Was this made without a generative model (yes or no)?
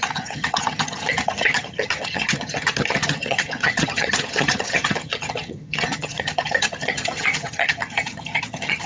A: no